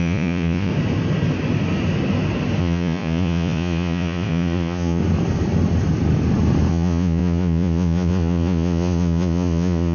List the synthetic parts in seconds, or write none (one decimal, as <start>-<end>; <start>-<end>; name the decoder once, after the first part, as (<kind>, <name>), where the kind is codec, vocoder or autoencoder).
0.0-0.7 (vocoder, Vocos); 2.6-5.0; 6.7-9.9